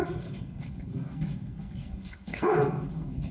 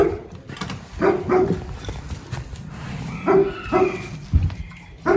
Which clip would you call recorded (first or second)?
second